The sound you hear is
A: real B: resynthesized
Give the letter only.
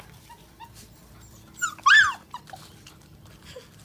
B